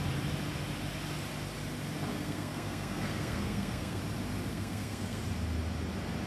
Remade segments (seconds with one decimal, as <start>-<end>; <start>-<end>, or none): 2.1-4.0; 4.5-5.2